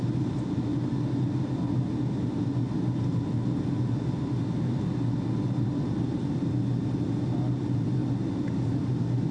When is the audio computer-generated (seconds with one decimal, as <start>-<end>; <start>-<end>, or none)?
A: none